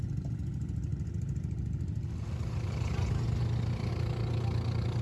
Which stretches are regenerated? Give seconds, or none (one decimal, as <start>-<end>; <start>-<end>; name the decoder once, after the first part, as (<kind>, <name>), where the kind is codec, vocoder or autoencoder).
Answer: none